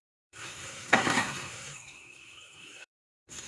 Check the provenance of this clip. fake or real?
fake